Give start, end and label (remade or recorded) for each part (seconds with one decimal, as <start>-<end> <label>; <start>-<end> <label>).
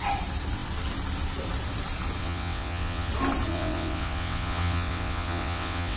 0.0-2.2 recorded; 2.2-3.1 remade; 3.1-3.5 recorded; 3.5-6.0 remade